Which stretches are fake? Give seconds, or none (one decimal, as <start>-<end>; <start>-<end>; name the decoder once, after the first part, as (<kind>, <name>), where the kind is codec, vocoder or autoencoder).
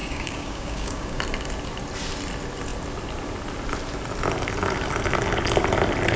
0.0-1.2 (codec, DAC)